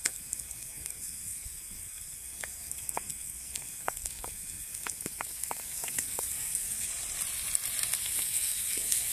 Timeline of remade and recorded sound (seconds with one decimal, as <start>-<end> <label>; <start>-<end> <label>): 0.0-6.9 remade; 6.9-8.0 recorded; 8.0-9.1 remade

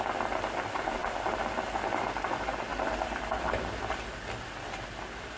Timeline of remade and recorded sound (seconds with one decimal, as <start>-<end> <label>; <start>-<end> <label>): 0.0-2.7 recorded; 2.7-3.5 remade; 3.5-5.4 recorded

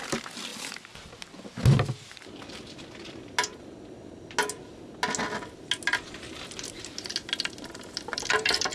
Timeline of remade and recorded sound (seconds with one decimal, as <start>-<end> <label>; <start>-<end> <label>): 0.0-8.7 recorded

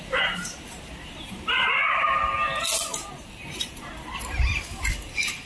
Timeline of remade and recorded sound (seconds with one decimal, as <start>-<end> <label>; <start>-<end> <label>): 0.0-2.0 remade; 2.0-2.9 recorded; 2.9-3.8 remade; 3.8-5.5 recorded